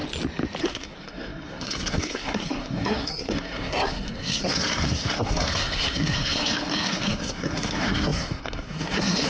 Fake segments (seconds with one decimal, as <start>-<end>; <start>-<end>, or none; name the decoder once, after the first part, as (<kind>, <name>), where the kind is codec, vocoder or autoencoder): 0.6-9.3 (codec, SNAC)